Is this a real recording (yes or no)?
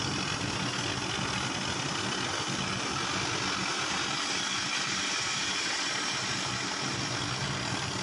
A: yes